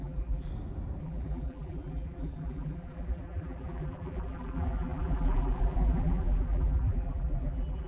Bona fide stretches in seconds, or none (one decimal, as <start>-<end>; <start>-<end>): 0.5-1.0